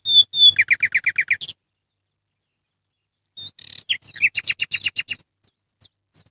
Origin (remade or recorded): recorded